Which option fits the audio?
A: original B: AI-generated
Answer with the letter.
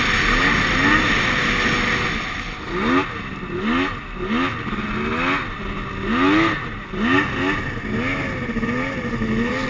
A